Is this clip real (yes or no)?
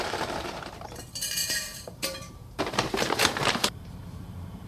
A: no